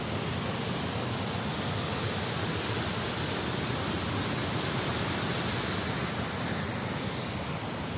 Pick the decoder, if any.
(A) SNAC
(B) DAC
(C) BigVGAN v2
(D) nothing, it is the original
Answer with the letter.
D